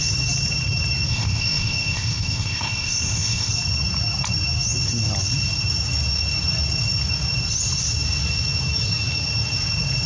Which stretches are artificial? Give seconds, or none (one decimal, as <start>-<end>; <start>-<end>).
1.1-3.5